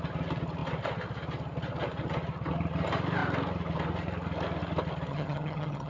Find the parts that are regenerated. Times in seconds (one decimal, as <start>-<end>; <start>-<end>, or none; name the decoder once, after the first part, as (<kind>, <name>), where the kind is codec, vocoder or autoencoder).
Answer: 5.1-5.9 (vocoder, HiFi-GAN)